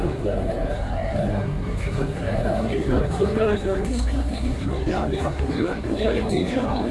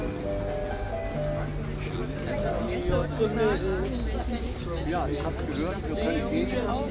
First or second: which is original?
second